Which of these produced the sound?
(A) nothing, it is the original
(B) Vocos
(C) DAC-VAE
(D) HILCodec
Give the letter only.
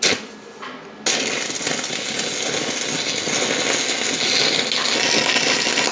A